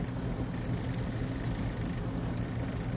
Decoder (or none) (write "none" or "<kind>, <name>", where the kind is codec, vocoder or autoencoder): none